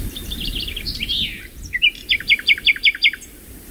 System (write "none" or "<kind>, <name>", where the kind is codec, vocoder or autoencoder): vocoder, BigVGAN v2